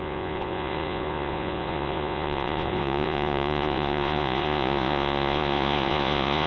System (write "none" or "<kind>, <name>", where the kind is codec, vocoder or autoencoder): vocoder, Vocos